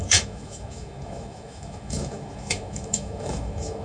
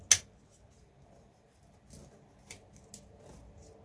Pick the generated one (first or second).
first